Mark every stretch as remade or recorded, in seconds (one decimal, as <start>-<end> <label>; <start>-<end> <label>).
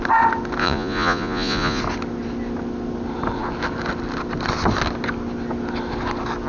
0.0-0.6 recorded; 0.6-1.8 remade; 1.8-6.5 recorded